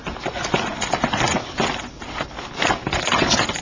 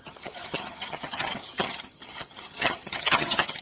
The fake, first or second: second